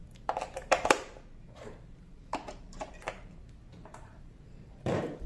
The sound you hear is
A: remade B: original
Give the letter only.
A